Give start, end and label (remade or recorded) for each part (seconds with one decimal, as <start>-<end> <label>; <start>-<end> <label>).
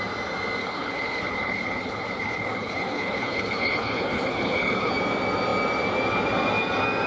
0.0-0.6 recorded; 0.6-4.9 remade; 4.9-7.1 recorded